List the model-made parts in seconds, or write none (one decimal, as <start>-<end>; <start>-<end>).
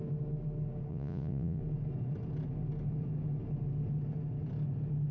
0.9-1.6